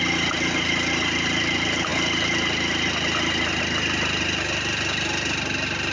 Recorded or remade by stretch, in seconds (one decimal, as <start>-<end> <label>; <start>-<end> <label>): 0.0-5.9 recorded